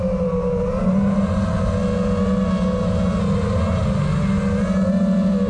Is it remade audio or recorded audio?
recorded